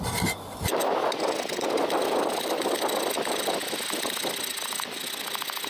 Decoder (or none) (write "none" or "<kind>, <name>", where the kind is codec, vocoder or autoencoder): none